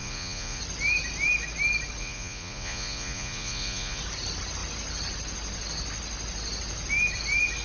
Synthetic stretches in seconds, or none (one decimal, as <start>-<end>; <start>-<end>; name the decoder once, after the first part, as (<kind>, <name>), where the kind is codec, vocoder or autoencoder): 0.0-0.6 (vocoder, Vocos); 2.0-4.0